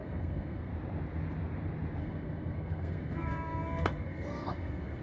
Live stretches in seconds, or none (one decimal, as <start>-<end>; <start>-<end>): 0.7-2.0